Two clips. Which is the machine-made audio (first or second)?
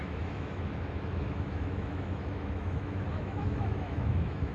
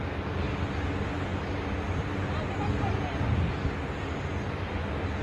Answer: first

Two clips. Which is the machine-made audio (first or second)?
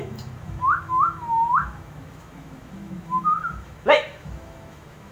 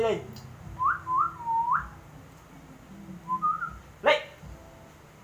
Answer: first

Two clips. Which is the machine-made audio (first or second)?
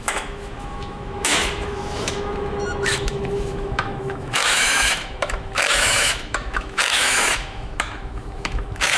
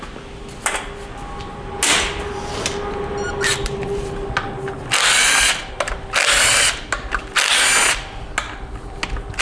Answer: first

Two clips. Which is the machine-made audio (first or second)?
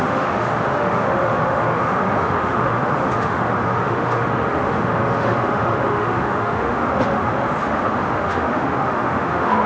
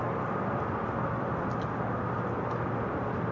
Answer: first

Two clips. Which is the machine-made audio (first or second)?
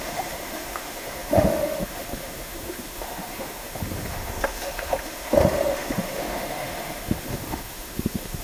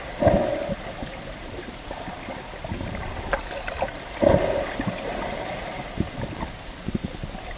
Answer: first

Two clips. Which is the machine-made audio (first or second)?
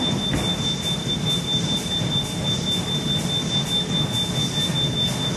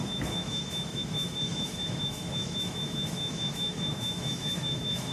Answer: second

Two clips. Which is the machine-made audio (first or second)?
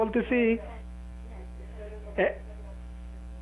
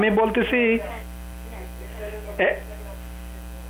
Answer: first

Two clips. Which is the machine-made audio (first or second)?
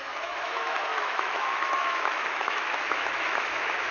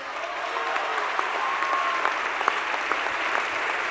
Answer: first